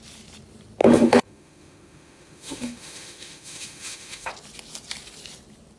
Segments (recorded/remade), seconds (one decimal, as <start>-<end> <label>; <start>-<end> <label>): 0.0-0.8 recorded; 0.8-4.3 remade; 4.3-5.8 recorded